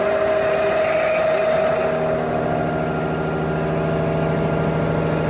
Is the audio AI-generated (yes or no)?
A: no